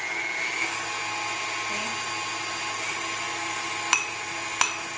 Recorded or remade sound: recorded